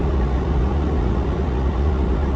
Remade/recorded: remade